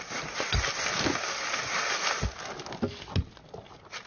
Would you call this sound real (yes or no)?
yes